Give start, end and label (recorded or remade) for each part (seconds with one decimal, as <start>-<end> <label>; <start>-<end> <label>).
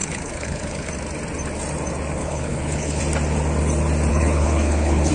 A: 0.0-0.9 remade; 0.9-2.2 recorded; 2.2-3.0 remade; 3.0-4.1 recorded; 4.1-5.1 remade